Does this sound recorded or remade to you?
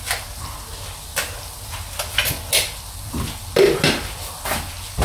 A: recorded